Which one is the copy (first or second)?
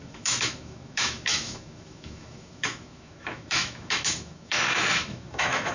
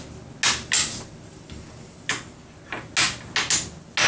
first